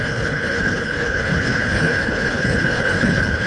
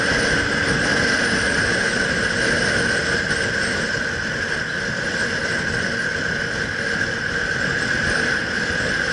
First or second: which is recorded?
second